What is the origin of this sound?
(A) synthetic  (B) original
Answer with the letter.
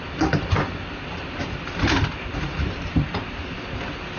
B